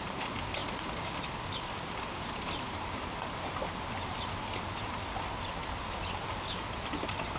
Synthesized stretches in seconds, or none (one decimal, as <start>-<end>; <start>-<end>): none